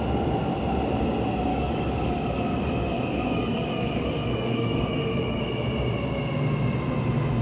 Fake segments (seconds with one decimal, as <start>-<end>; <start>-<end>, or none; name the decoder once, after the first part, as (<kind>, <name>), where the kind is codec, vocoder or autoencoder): 1.5-5.4 (codec, DAC)